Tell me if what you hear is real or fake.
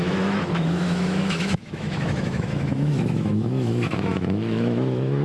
fake